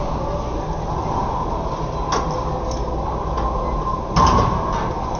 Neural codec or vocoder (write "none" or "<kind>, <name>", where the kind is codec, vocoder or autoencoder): none